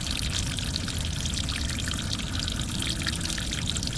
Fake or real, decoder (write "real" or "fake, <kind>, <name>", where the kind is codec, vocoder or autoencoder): real